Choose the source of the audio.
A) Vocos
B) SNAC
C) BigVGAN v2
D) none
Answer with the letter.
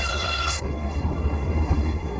B